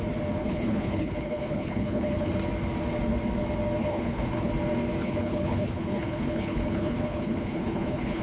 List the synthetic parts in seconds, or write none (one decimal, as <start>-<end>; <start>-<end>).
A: 0.4-2.3; 3.8-4.5; 5.0-8.2